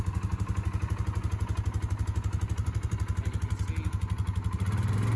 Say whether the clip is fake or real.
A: real